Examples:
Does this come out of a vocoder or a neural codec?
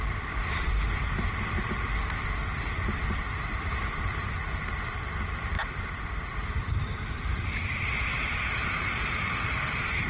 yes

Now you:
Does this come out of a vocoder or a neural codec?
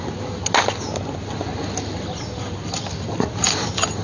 no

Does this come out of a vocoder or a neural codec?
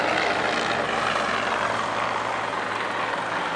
no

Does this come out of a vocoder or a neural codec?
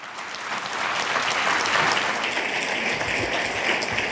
no